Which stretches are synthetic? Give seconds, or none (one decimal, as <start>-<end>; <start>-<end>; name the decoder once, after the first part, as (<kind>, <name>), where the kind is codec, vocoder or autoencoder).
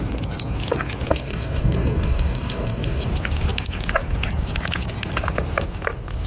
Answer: 1.1-3.1 (codec, DAC)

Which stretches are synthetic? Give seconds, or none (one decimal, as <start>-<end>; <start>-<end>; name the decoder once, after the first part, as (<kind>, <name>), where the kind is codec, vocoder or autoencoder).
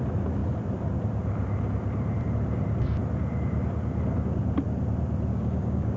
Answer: 5.3-6.0 (codec, DAC)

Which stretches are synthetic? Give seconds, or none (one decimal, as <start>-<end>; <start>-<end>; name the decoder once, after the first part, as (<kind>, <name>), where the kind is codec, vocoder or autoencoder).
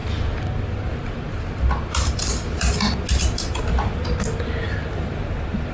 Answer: none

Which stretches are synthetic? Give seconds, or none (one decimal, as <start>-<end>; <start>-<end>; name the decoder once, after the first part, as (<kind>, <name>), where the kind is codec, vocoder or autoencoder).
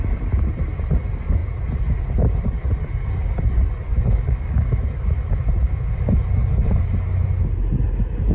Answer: 3.9-4.8 (codec, DAC)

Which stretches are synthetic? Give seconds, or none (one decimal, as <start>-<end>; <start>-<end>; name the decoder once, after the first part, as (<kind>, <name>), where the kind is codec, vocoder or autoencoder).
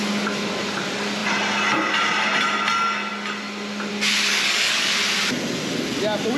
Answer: 4.3-4.9 (codec, DAC)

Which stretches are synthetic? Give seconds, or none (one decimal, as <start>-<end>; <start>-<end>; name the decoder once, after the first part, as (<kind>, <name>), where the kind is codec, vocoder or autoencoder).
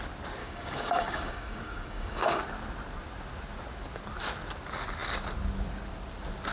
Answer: 0.4-2.4 (codec, DAC)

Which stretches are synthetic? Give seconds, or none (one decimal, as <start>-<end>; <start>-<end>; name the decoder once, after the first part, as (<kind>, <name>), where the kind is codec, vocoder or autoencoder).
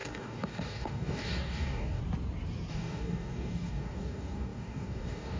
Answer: 0.0-2.0 (codec, DAC); 2.7-5.4